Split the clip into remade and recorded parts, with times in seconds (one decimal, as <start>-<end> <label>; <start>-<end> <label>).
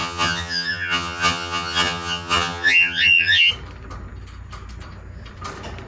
0.0-3.5 remade; 3.5-5.9 recorded